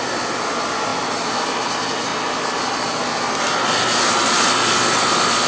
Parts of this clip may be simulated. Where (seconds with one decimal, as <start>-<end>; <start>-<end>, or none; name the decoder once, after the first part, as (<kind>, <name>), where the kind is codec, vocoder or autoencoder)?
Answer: 0.0-0.9 (vocoder, BigVGAN v2); 1.7-2.1